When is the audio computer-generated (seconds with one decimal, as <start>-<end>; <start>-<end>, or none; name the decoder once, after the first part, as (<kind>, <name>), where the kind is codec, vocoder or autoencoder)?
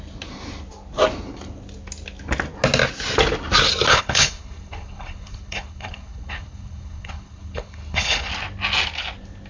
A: 3.9-8.3 (codec, HILCodec)